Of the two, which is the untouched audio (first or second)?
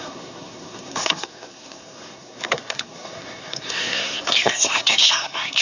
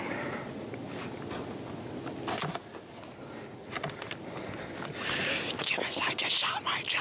second